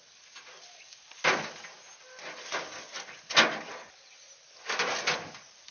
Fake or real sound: real